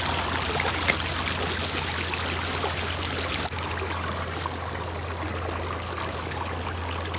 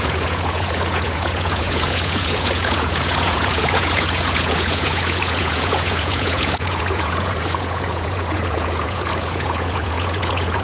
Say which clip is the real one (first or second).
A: first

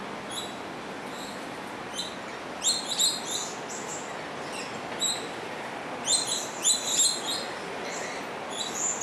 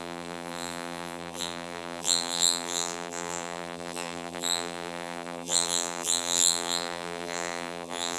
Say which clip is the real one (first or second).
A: first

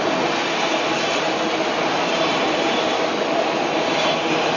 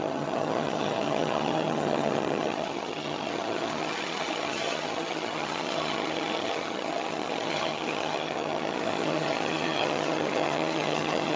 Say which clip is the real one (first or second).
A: first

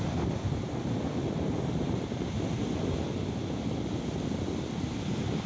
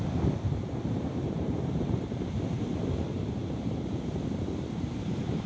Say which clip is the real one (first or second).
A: first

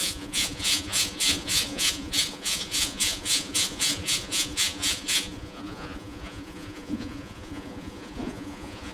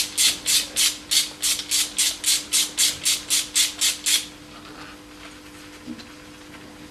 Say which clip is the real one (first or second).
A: second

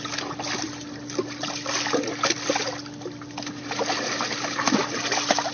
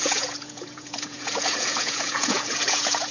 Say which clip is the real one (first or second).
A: first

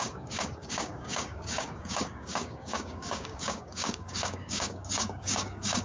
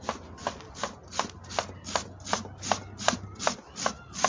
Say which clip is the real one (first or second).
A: second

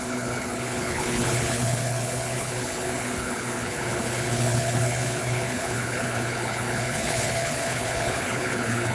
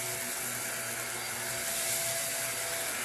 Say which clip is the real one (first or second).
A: second